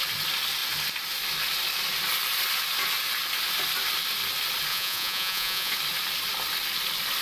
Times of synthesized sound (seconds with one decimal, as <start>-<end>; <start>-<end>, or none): 4.7-5.7